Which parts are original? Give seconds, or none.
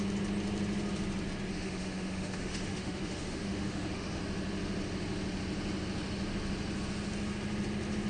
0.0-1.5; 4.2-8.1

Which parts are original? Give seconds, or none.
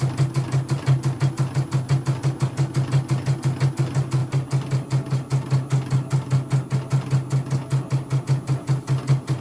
0.0-9.4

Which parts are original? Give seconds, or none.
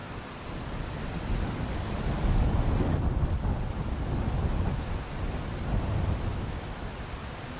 0.0-6.3; 6.9-7.6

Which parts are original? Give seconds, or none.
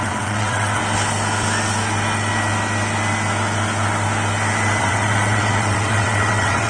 0.8-4.8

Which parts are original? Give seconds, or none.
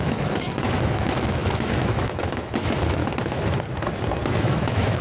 3.0-4.4